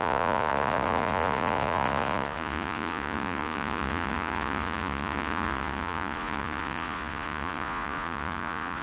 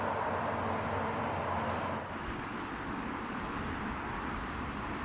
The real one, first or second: second